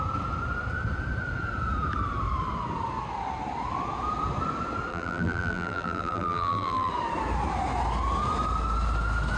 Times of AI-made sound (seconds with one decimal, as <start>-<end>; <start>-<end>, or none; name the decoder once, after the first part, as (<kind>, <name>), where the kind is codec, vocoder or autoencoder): 4.9-6.9 (vocoder, BigVGAN v2)